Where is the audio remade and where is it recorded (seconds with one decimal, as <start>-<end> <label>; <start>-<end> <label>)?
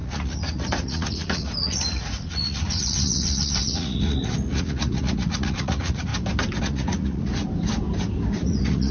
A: 0.0-6.1 remade; 6.1-6.6 recorded; 6.6-7.3 remade; 7.3-8.4 recorded; 8.4-8.9 remade